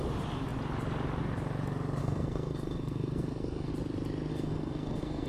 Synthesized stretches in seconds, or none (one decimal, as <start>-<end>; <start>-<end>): 2.0-3.7; 4.3-5.3